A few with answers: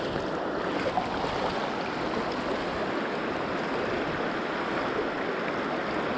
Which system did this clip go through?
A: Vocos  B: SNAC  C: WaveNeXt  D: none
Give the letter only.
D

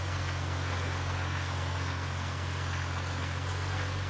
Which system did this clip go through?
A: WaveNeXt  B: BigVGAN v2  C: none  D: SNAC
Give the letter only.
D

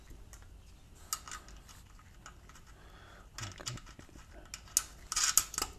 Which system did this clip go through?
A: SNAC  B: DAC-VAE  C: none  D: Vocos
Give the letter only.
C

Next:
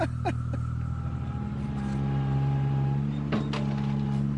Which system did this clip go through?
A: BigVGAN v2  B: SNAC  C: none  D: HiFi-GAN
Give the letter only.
C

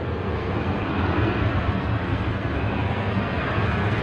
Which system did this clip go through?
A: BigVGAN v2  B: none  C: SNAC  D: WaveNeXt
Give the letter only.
C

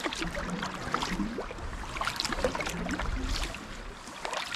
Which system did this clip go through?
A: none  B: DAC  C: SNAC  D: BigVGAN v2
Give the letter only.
A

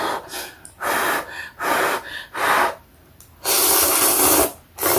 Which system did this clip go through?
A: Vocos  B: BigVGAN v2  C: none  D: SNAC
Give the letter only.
C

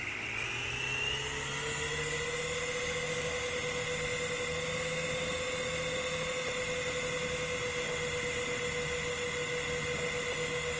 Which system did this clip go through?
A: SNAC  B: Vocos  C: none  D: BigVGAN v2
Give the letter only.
C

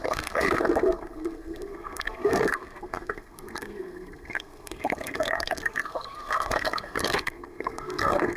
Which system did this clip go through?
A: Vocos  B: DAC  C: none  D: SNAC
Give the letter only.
D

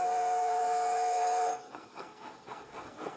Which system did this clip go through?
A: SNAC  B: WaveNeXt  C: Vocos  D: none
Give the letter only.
A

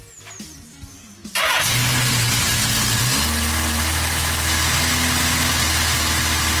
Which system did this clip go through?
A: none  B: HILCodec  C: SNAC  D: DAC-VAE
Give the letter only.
A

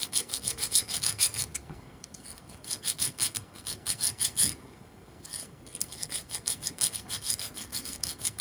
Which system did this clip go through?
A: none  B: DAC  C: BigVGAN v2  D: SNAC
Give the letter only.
D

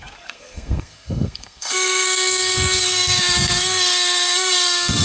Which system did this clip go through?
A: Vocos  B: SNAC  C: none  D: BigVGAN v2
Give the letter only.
B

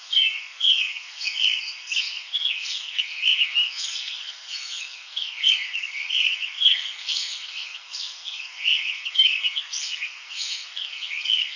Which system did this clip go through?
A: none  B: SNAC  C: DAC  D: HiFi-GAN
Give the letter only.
B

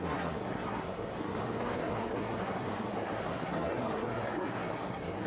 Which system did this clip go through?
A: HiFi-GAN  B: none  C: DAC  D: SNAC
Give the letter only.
D